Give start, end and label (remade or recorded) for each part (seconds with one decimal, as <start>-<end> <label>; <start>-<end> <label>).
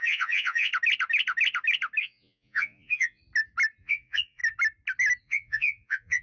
0.0-0.7 remade; 0.7-2.0 recorded; 2.0-3.2 remade; 3.2-3.8 recorded; 3.8-4.4 remade; 4.4-5.2 recorded; 5.2-6.2 remade